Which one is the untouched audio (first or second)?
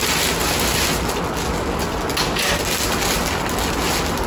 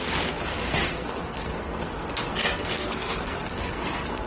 first